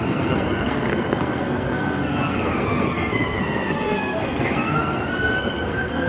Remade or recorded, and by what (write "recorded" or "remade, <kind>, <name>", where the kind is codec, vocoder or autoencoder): remade, codec, SNAC